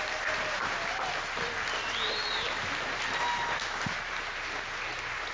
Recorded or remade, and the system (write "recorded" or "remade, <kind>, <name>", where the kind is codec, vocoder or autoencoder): recorded